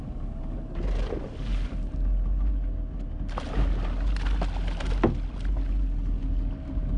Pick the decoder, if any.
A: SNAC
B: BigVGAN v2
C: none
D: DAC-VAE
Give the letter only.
C